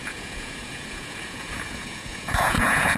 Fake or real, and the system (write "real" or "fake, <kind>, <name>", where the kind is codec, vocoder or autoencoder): fake, vocoder, Vocos